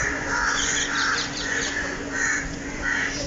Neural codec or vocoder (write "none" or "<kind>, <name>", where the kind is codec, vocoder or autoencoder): vocoder, Vocos